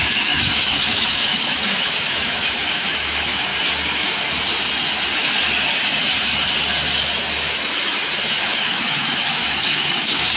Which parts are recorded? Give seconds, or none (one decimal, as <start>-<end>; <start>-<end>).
3.5-8.3